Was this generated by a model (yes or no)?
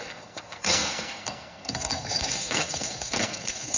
yes